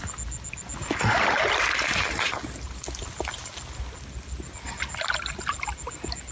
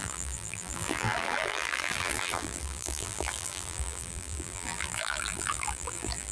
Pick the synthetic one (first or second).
second